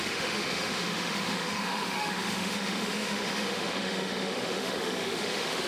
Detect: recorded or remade remade